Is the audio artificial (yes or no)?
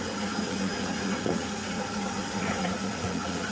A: yes